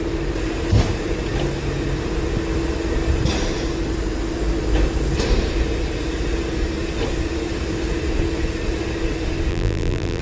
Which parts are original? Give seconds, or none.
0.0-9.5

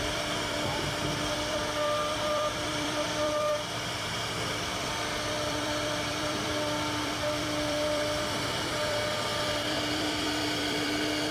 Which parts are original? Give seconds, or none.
none

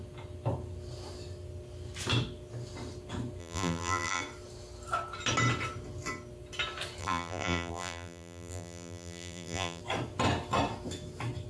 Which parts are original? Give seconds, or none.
0.0-3.4; 4.2-7.0; 9.8-11.5

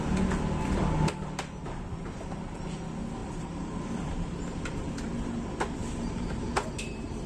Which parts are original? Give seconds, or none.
0.0-3.2; 3.8-5.8

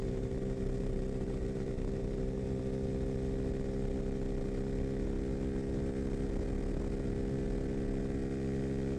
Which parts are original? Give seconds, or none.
2.6-9.0

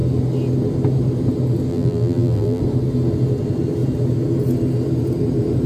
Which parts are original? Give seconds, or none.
0.0-1.7; 2.6-5.7

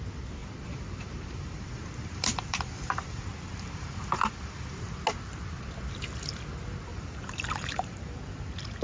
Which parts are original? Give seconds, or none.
0.0-0.4; 4.8-6.9; 8.1-8.8